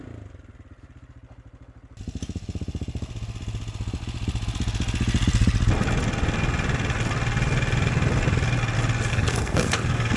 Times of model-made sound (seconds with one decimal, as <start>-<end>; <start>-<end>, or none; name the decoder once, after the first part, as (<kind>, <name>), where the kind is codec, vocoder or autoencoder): 9.1-10.2 (codec, SNAC)